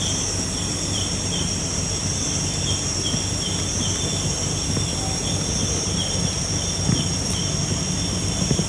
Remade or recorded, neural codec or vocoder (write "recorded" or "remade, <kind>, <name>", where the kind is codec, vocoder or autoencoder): recorded